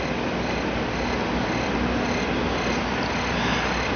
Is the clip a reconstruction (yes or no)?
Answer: no